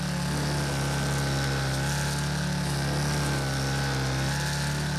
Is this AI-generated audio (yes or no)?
no